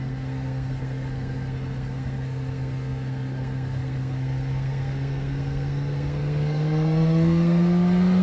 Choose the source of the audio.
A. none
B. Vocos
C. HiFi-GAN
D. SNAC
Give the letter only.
D